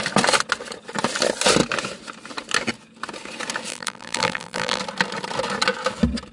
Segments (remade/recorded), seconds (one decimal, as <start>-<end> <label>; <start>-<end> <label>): 0.0-3.7 recorded; 3.7-4.8 remade; 4.8-6.3 recorded